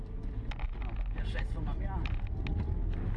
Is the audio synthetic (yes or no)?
no